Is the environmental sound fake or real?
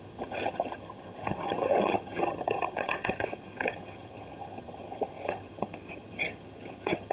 fake